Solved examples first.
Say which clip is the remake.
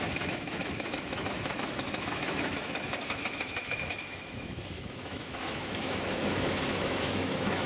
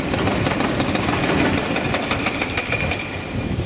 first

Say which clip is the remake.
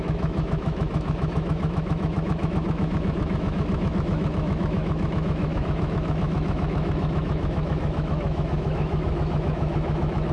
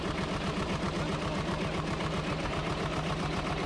first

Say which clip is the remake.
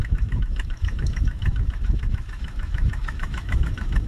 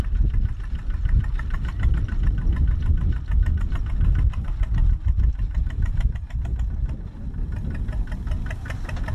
first